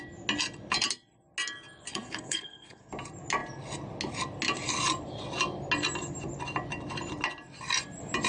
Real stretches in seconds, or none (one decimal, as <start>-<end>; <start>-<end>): 0.0-1.9; 2.9-8.3

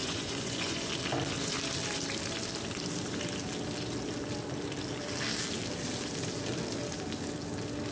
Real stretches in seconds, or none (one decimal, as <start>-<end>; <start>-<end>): 0.9-7.9

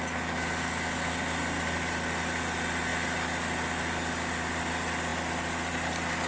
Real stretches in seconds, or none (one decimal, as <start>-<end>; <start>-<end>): 0.0-6.3

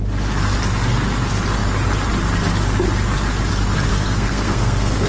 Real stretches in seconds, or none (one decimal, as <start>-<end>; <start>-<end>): 0.0-3.9

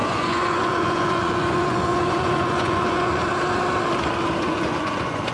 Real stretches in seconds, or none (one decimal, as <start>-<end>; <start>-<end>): 3.2-4.4

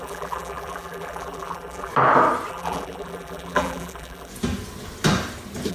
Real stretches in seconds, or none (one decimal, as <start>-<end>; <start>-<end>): 1.9-2.5; 4.3-5.7